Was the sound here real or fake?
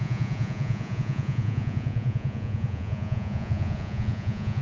fake